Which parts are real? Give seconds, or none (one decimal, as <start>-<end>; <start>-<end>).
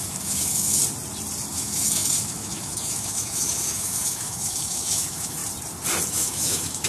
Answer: 0.8-1.5; 5.4-6.1